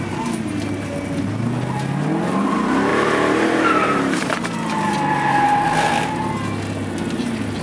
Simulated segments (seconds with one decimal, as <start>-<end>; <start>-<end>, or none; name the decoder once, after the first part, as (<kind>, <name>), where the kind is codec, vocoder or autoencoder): 2.9-4.3 (vocoder, BigVGAN v2)